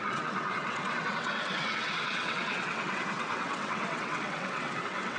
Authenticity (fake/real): fake